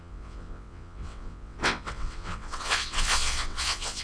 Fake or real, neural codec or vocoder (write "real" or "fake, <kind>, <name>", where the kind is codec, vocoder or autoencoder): fake, vocoder, WaveNeXt